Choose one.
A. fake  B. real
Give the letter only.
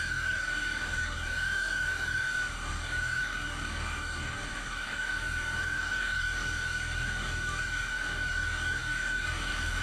A